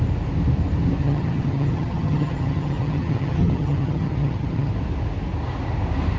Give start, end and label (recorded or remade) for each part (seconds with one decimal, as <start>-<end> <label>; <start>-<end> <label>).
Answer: 0.0-1.0 recorded; 1.0-4.7 remade; 4.7-6.2 recorded